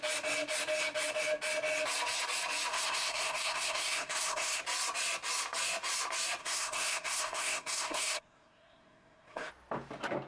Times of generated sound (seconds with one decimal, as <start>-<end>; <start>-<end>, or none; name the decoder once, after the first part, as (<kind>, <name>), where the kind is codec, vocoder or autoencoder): 2.7-4.6 (codec, SNAC); 6.4-9.5